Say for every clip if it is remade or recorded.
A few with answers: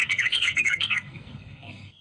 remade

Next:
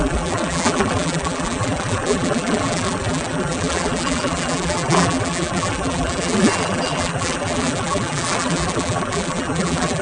remade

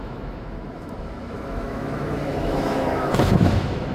remade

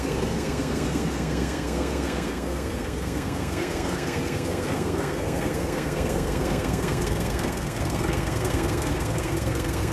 remade